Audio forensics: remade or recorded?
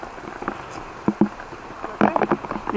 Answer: recorded